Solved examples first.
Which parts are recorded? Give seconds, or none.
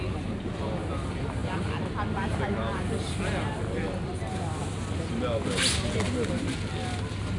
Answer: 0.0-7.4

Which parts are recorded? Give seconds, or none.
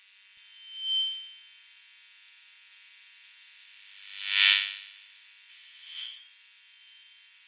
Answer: 0.0-5.5; 6.2-7.5